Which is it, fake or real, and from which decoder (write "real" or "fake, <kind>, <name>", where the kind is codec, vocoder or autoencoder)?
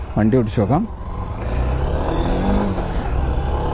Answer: real